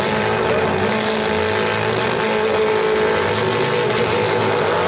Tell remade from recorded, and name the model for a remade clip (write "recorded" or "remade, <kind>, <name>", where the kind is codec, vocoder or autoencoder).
recorded